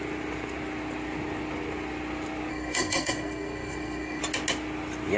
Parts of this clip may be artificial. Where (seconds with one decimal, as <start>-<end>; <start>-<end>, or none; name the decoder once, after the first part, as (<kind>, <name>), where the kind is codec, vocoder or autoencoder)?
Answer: 2.5-4.2 (codec, SNAC)